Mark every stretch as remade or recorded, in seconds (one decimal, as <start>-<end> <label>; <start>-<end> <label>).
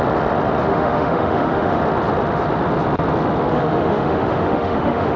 0.0-0.7 recorded; 0.7-1.8 remade; 1.8-3.5 recorded; 3.5-5.2 remade